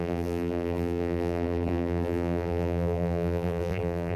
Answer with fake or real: fake